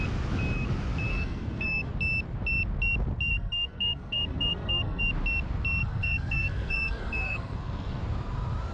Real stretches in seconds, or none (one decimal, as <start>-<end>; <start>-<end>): 0.0-1.1; 1.9-3.3; 5.0-5.8; 8.0-8.7